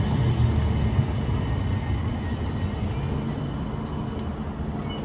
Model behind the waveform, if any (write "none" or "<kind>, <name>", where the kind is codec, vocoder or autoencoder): none